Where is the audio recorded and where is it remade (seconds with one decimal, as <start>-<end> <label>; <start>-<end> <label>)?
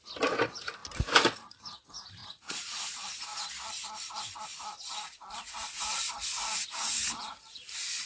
0.0-2.2 recorded; 2.2-2.9 remade; 2.9-8.1 recorded